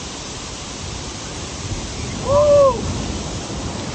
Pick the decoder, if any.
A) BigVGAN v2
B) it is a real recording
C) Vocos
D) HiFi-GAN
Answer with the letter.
B